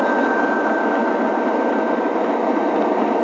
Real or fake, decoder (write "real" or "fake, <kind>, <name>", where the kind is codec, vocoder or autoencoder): real